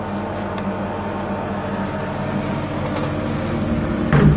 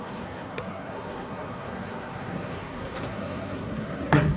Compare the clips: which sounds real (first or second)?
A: first